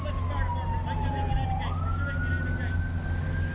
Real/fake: real